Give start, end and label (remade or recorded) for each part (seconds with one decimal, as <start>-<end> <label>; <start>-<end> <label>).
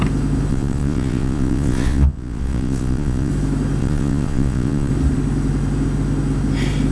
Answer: 0.0-0.5 recorded; 0.5-3.3 remade; 3.3-3.8 recorded; 3.8-4.9 remade; 4.9-6.9 recorded